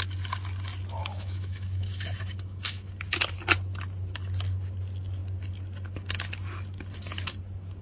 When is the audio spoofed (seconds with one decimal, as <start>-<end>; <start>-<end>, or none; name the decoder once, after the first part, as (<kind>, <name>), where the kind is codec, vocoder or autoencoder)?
1.0-2.9 (autoencoder, DAC-VAE)